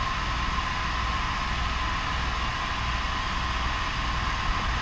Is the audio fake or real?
real